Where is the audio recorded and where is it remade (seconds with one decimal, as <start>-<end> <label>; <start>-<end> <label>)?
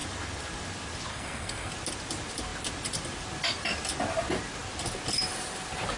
0.0-1.1 recorded; 1.1-1.7 remade; 1.7-6.0 recorded